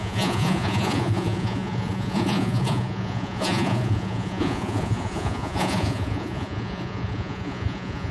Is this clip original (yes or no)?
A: no